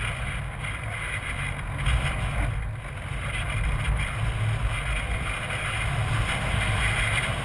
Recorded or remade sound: recorded